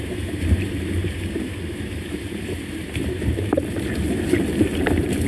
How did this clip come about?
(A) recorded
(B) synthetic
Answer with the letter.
B